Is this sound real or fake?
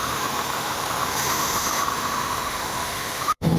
fake